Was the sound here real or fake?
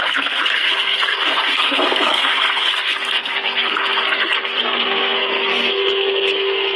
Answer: fake